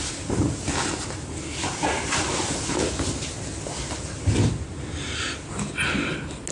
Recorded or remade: recorded